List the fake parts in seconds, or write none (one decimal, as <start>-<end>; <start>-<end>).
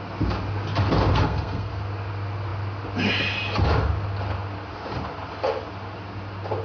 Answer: 1.1-1.7